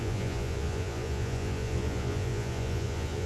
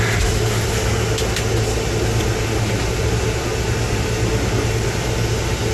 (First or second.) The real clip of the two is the second